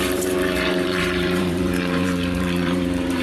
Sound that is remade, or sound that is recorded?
remade